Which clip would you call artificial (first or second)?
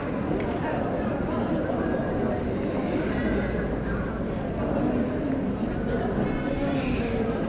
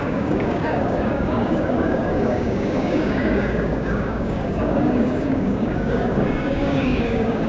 second